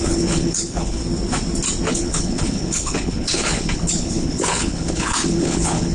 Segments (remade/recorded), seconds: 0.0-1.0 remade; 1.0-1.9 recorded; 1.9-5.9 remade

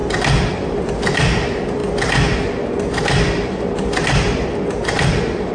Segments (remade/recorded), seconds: 0.0-5.5 recorded

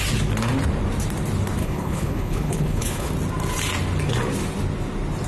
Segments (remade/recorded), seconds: 0.0-1.6 recorded; 1.6-3.1 remade; 3.1-5.3 recorded

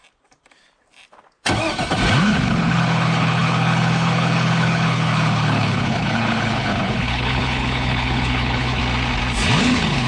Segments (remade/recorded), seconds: 0.0-2.2 recorded; 2.2-8.8 remade; 8.8-9.6 recorded; 9.6-10.1 remade